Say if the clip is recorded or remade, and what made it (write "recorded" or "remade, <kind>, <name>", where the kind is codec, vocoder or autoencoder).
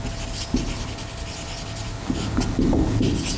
recorded